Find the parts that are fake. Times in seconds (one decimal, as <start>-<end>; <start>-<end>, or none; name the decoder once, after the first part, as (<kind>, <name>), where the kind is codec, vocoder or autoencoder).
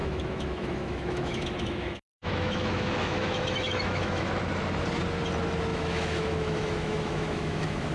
0.0-4.3 (autoencoder, DAC-VAE); 5.7-7.9